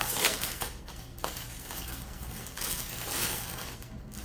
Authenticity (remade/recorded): remade